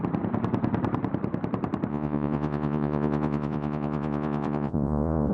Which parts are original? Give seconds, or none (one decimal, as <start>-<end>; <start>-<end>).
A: 0.0-1.9